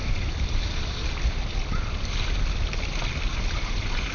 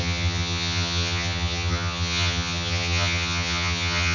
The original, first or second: first